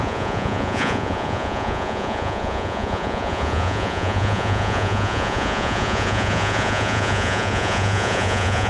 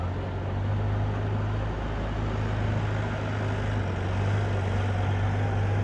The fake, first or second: first